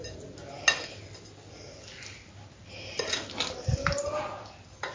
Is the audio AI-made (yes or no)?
no